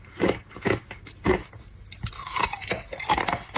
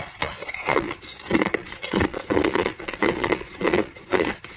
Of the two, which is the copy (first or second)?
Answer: second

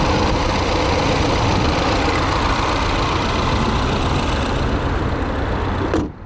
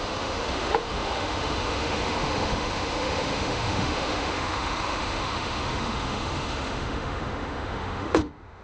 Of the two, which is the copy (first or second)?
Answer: second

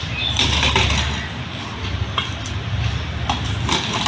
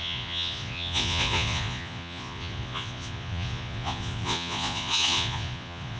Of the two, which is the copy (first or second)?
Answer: second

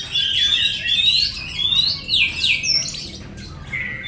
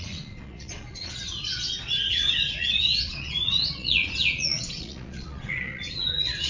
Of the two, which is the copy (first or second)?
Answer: second